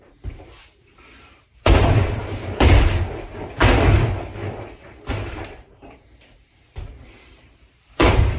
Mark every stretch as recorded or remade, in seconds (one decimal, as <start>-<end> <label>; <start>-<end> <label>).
0.0-3.6 remade; 3.6-4.6 recorded; 4.6-8.4 remade